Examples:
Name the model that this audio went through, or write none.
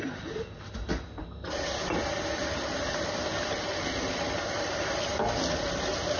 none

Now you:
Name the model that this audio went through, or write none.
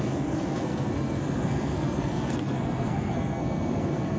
codec, SNAC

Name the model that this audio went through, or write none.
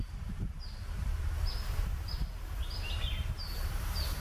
vocoder, BigVGAN v2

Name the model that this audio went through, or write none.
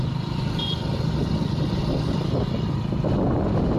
none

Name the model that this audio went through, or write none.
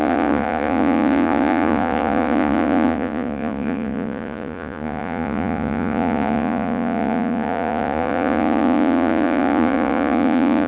vocoder, Vocos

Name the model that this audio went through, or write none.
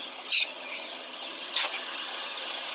vocoder, HiFi-GAN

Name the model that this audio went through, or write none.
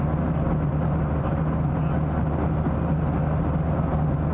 none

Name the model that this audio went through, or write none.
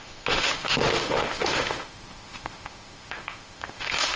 autoencoder, DAC-VAE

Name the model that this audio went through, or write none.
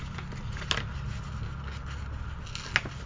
none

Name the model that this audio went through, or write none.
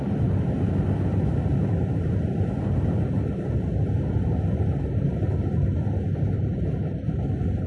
none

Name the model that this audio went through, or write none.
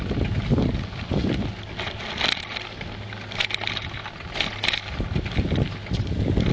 none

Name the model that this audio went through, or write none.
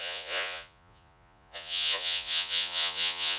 vocoder, Vocos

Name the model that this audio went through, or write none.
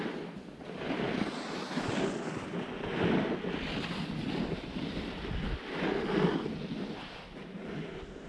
none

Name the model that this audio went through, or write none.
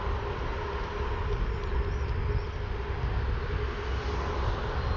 none